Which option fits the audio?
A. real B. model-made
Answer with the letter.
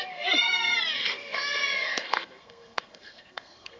B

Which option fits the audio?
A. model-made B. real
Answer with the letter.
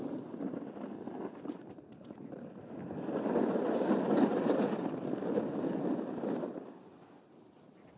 B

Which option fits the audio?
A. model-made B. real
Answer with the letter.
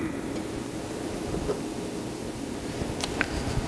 B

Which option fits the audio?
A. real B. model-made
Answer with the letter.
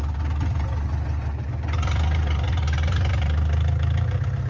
A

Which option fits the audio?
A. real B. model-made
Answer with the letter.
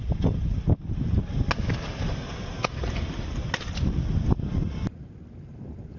A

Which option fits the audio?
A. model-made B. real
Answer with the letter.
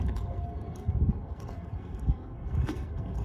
A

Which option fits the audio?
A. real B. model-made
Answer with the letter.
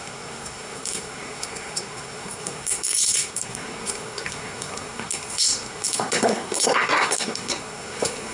B